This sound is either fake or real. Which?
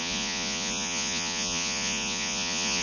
fake